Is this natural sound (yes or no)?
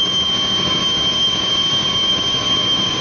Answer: no